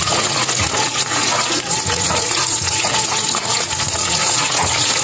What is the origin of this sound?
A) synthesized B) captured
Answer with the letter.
A